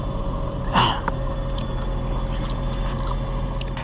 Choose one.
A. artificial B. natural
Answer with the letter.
B